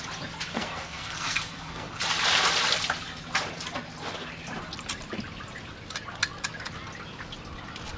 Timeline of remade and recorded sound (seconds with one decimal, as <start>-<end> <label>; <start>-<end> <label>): 0.0-0.5 recorded; 0.5-2.0 remade; 2.0-8.0 recorded